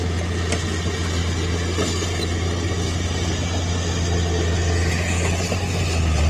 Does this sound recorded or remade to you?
recorded